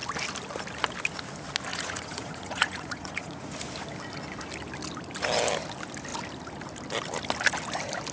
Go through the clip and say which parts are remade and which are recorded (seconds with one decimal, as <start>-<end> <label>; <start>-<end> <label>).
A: 0.0-1.7 recorded; 1.7-3.6 remade; 3.6-8.1 recorded